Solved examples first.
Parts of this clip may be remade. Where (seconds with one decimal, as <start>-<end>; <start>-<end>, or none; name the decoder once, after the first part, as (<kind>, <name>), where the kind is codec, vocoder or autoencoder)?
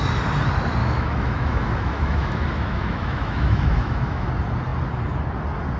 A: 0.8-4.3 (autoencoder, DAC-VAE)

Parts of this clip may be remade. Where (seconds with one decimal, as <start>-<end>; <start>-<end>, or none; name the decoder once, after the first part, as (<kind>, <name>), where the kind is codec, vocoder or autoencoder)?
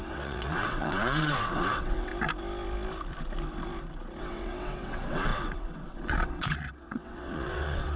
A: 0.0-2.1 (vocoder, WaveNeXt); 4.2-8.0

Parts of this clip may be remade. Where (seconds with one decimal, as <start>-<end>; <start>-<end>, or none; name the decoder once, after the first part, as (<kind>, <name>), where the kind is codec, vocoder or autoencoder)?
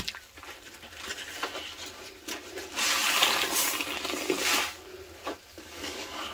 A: 5.5-6.3 (codec, DAC)